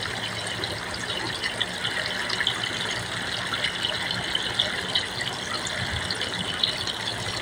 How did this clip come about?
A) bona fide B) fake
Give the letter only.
A